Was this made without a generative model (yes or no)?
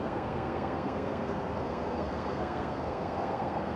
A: no